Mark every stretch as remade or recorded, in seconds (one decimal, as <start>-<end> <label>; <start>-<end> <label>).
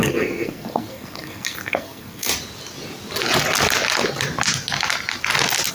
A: 0.0-2.3 remade; 2.3-5.7 recorded